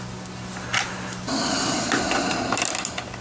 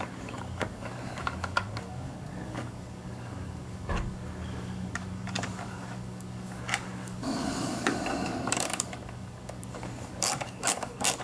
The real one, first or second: first